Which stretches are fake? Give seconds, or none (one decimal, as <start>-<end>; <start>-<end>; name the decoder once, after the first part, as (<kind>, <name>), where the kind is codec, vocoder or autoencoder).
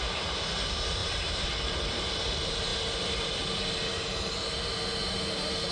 1.0-1.5 (vocoder, BigVGAN v2); 5.0-5.7